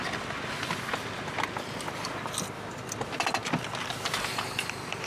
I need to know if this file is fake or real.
real